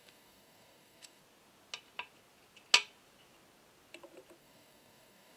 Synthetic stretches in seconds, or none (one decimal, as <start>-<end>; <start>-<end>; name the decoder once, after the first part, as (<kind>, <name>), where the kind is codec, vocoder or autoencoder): 0.0-1.2 (codec, DAC); 4.4-5.4